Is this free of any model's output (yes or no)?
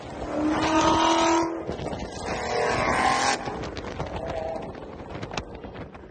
yes